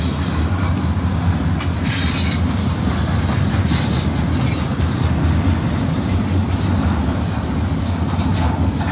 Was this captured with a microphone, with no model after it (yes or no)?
yes